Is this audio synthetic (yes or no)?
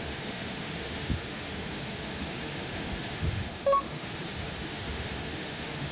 yes